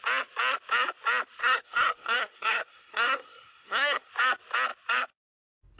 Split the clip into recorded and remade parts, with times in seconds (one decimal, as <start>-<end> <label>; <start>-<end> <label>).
0.0-1.4 recorded; 1.4-4.1 remade; 4.1-5.8 recorded